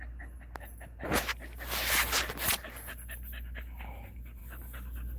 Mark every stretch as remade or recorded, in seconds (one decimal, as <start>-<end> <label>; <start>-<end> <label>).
0.0-5.2 recorded